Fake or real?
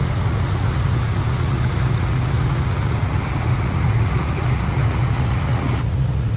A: fake